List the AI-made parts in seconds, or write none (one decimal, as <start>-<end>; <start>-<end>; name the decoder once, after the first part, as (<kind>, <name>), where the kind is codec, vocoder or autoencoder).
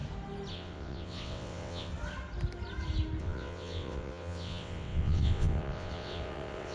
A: 0.5-1.9 (vocoder, WaveNeXt); 3.2-6.7